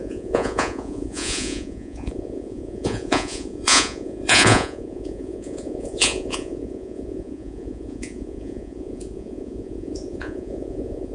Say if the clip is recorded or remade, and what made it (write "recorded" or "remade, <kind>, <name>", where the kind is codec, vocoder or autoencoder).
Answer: remade, vocoder, Vocos